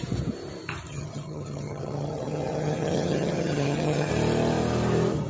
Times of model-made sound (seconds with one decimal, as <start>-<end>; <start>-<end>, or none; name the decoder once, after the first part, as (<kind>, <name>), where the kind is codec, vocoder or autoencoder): 0.9-4.1 (vocoder, HiFi-GAN)